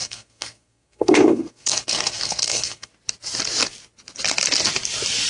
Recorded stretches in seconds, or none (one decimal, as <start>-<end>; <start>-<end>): 2.9-5.3